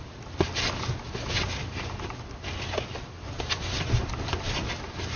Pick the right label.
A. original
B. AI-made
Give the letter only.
A